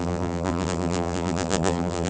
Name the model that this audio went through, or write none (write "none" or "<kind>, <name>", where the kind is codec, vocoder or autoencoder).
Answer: vocoder, BigVGAN v2